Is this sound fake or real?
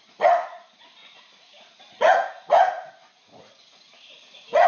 fake